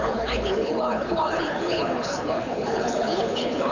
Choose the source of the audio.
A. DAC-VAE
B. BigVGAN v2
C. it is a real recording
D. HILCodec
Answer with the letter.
D